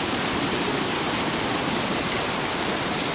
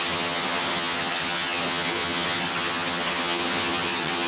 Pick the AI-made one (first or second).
second